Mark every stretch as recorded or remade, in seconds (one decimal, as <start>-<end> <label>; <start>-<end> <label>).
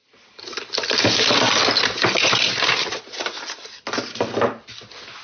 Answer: 0.0-5.2 recorded